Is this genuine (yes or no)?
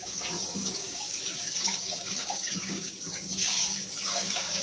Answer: no